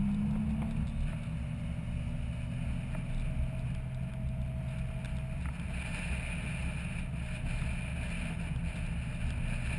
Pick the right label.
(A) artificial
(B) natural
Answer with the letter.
B